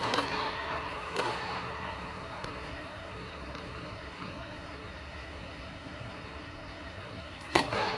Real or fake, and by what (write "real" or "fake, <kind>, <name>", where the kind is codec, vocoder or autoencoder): fake, codec, SNAC